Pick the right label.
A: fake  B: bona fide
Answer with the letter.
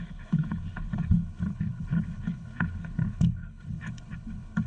A